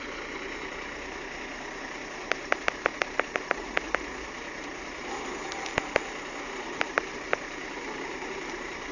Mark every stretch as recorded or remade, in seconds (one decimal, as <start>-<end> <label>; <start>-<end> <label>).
0.0-2.9 remade; 2.9-6.4 recorded; 6.4-8.9 remade